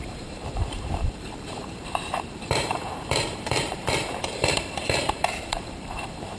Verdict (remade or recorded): remade